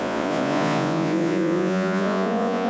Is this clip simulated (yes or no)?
yes